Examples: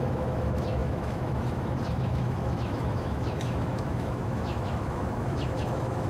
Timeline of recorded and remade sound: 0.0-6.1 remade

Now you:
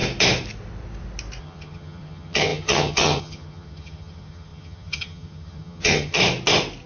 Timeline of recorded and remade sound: 0.0-1.4 recorded; 1.4-6.2 remade; 6.2-6.9 recorded

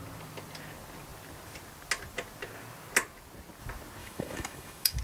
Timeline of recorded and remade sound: 0.0-4.0 recorded; 4.0-5.0 remade

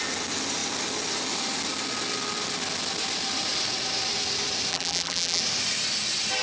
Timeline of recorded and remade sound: 0.0-4.7 recorded; 4.7-5.4 remade; 5.4-6.4 recorded

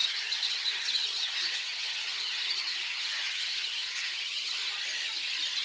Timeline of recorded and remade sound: 0.0-4.6 remade; 4.6-5.6 recorded

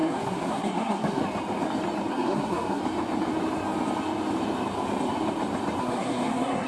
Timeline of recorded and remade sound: 0.0-1.2 remade; 1.2-2.1 recorded; 2.1-2.8 remade; 2.8-5.8 recorded; 5.8-6.7 remade